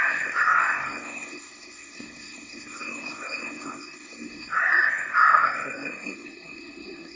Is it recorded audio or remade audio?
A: remade